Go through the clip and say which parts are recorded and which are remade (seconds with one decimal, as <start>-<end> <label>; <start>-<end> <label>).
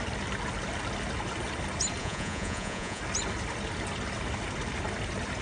0.0-2.0 recorded; 2.0-3.0 remade; 3.0-5.4 recorded